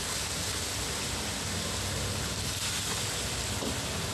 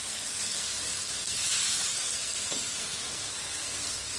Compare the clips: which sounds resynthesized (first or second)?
second